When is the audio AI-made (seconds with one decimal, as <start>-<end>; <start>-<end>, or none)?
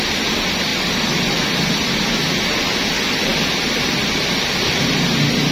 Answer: none